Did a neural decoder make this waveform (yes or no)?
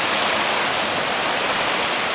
no